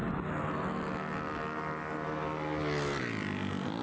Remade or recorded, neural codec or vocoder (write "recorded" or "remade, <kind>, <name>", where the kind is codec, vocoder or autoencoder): recorded